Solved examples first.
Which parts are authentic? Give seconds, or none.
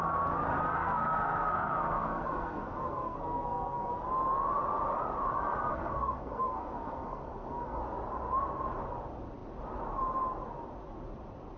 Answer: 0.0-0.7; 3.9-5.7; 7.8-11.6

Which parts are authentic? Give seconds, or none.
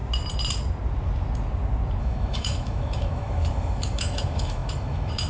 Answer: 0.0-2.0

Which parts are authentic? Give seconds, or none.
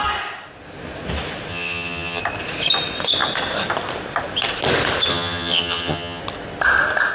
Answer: 0.0-1.5; 2.2-5.1; 6.2-7.1